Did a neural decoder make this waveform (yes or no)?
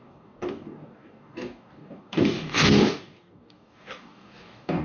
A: yes